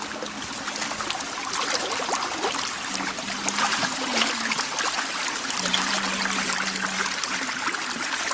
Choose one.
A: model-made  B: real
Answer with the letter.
B